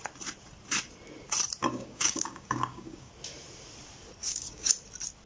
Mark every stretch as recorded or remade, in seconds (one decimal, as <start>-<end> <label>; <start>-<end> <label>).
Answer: 0.0-1.6 recorded; 1.6-3.1 remade; 3.1-4.2 recorded; 4.2-4.7 remade; 4.7-5.3 recorded